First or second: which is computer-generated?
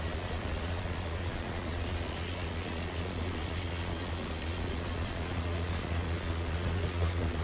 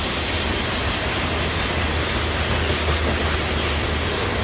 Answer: first